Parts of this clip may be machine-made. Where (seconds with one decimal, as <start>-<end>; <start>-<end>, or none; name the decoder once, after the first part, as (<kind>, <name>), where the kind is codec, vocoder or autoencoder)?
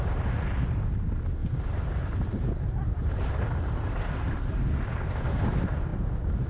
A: 1.4-4.6 (vocoder, BigVGAN v2)